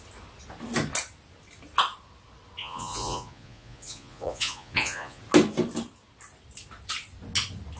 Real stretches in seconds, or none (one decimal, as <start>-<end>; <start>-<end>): 0.0-2.6; 5.2-7.8